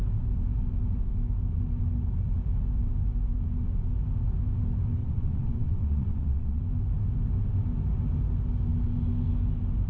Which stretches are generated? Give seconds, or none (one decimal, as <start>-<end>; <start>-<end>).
5.0-6.6